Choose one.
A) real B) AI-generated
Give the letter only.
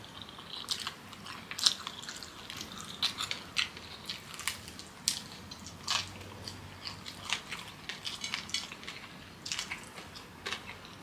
A